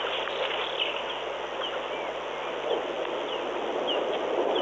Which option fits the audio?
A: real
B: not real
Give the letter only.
A